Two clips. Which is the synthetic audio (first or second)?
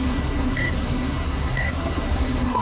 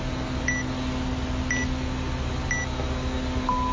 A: first